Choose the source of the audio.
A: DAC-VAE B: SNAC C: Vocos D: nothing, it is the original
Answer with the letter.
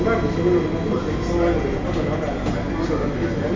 D